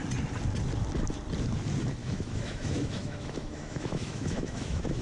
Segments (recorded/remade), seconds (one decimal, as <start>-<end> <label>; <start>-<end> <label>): 0.0-2.0 recorded; 2.0-5.0 remade